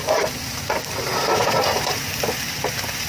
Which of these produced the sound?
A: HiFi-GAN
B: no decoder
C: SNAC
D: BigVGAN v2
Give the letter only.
B